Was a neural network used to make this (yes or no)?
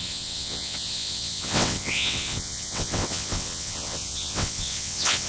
yes